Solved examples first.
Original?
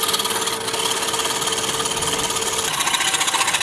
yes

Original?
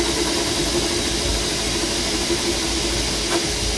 yes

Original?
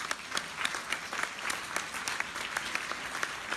yes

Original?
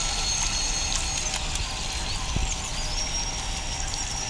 yes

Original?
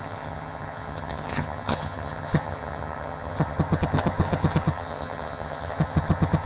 no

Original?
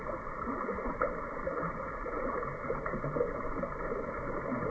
no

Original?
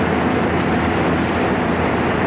yes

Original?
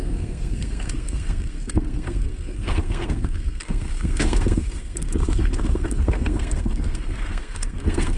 no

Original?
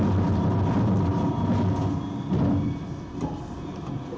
yes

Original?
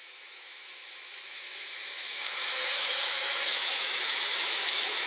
no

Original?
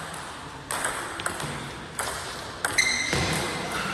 yes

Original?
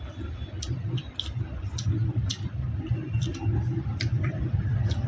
yes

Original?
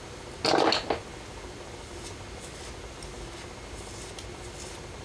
yes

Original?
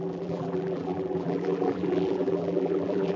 no